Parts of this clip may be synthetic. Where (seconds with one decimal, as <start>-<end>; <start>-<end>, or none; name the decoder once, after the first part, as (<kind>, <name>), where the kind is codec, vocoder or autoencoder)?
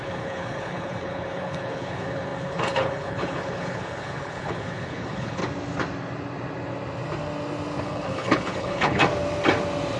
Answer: 0.0-5.4 (codec, HILCodec); 7.8-9.0